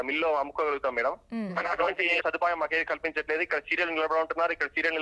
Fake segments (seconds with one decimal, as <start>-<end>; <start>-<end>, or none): 1.5-2.2